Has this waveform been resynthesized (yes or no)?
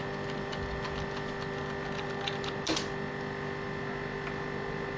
no